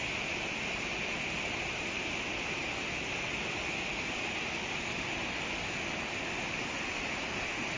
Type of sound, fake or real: real